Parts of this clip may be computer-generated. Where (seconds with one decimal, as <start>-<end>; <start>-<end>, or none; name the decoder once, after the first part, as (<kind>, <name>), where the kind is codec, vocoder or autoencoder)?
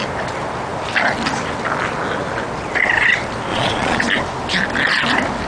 3.5-4.0 (vocoder, Vocos)